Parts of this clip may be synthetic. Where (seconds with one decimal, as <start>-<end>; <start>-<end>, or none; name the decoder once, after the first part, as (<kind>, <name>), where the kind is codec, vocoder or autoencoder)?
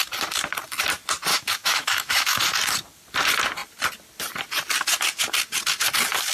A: 1.3-2.4 (autoencoder, DAC-VAE)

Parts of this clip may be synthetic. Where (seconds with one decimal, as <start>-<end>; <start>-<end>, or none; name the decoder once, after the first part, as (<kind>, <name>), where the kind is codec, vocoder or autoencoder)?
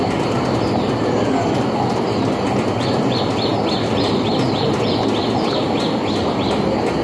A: none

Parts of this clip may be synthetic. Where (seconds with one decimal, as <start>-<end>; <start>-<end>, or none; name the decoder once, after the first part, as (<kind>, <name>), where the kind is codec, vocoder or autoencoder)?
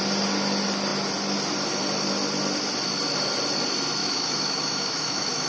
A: 4.0-5.5 (autoencoder, DAC-VAE)